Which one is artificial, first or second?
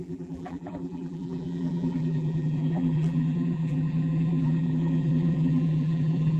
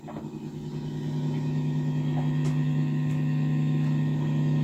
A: first